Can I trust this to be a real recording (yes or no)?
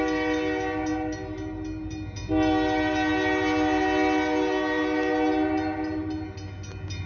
yes